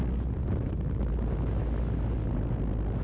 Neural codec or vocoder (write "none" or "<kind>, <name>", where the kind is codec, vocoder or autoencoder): none